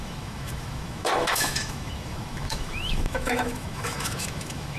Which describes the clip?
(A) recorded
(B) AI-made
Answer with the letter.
B